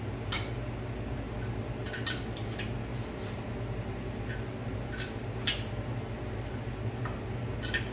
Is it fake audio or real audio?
real